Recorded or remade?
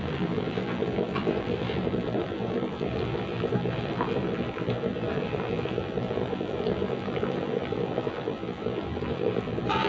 remade